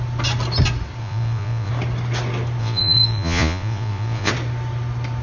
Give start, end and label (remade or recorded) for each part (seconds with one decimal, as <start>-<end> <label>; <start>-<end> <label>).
0.0-1.0 recorded; 1.0-1.7 remade; 1.7-2.6 recorded; 2.6-4.3 remade; 4.3-5.2 recorded